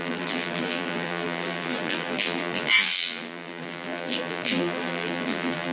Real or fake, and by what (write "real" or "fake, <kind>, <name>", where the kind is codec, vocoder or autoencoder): fake, vocoder, BigVGAN v2